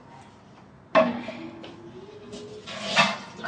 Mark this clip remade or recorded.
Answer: recorded